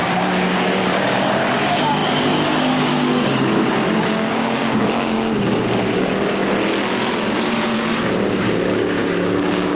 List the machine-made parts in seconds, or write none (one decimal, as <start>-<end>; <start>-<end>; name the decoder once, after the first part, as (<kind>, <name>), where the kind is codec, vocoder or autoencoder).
0.0-6.4 (codec, DAC); 8.0-9.8